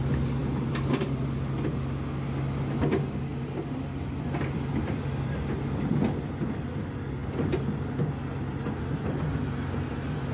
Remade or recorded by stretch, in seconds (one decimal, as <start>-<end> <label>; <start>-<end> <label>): 0.0-0.4 recorded; 0.4-1.5 remade; 1.5-3.3 recorded; 3.3-5.5 remade; 5.5-10.3 recorded